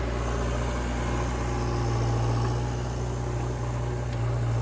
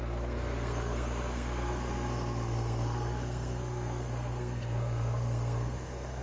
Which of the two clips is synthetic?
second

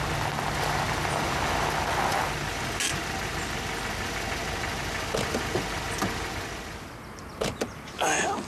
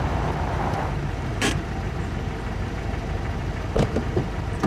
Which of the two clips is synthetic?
second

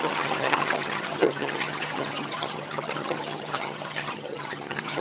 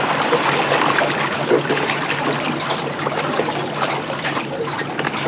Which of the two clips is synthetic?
first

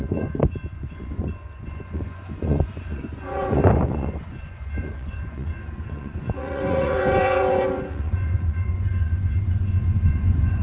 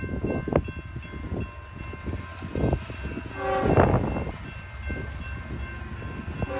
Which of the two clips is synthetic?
first